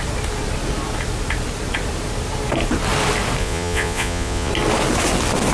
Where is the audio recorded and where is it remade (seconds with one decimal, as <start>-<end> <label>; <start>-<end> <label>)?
0.0-3.4 recorded; 3.4-4.5 remade; 4.5-5.5 recorded